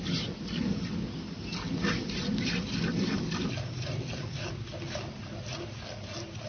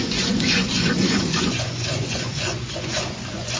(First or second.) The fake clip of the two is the second